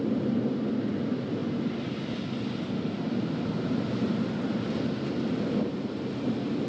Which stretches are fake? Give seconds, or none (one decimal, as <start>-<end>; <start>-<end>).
none